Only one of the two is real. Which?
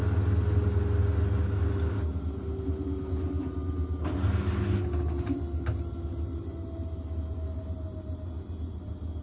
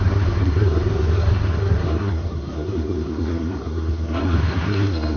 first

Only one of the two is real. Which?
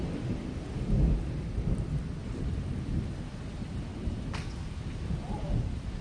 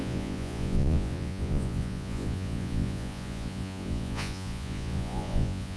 first